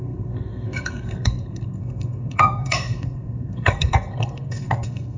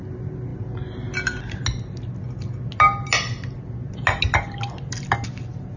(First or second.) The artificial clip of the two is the first